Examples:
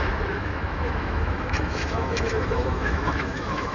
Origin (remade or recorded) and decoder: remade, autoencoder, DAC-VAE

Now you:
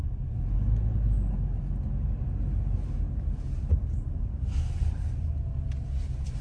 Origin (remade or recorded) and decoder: recorded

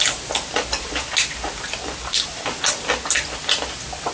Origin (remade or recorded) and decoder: recorded